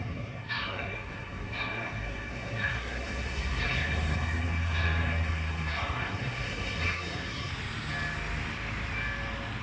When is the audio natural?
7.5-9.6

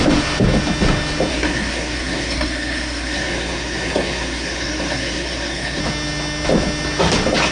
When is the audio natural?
0.0-1.3; 5.8-7.5

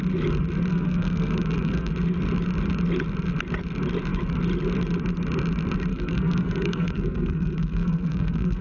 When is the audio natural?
0.0-0.7; 1.9-5.9

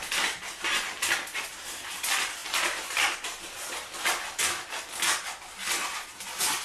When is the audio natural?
0.0-6.6

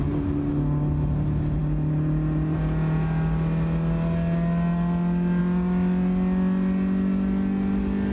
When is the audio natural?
0.0-8.1

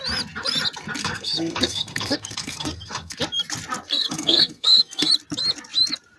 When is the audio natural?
0.0-1.0; 3.2-3.9; 5.1-6.2